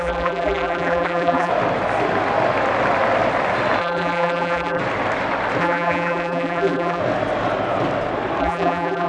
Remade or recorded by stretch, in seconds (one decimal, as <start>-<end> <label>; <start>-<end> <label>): 0.0-1.5 remade; 1.5-3.8 recorded; 3.8-4.8 remade; 4.8-5.6 recorded; 5.6-7.0 remade; 7.0-8.4 recorded; 8.4-9.1 remade